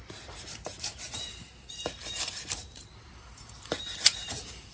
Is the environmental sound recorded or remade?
remade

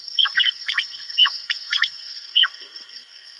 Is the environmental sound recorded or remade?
remade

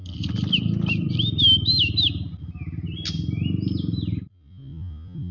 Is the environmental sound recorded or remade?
recorded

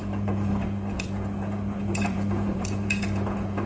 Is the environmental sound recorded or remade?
remade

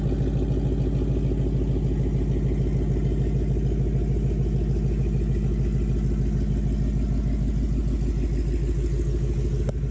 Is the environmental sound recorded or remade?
recorded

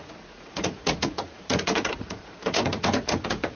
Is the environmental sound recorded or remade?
remade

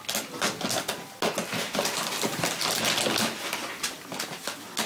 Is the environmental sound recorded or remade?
recorded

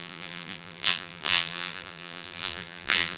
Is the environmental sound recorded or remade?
remade